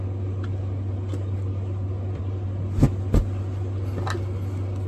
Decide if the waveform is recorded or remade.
recorded